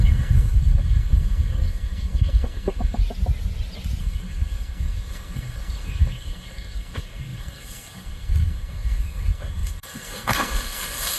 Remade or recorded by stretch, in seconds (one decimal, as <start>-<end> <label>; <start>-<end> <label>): 0.0-3.0 remade; 3.0-4.0 recorded; 4.0-11.2 remade